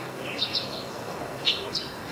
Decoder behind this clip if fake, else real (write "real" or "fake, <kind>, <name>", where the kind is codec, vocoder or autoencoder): fake, codec, SNAC